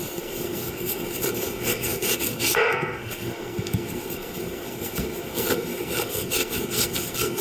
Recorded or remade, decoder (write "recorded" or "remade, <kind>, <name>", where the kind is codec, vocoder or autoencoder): remade, codec, SNAC